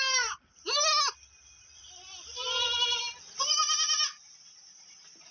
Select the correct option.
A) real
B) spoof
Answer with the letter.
A